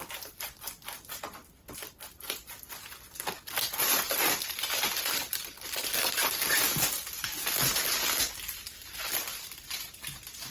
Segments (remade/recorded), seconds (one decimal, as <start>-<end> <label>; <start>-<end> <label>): 0.0-10.5 recorded